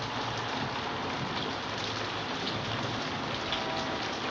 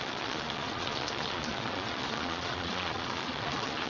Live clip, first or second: first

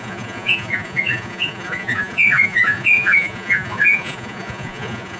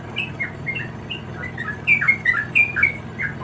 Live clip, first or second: second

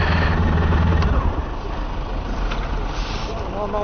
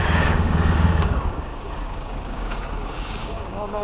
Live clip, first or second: first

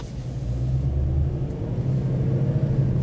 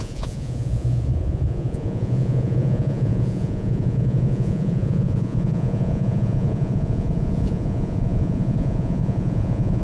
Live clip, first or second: first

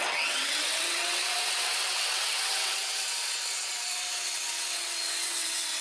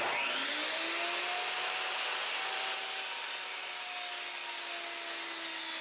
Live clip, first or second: second